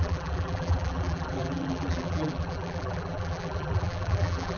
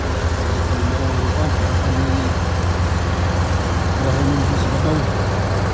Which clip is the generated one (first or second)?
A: first